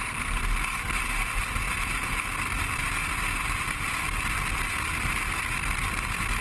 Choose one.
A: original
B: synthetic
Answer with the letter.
B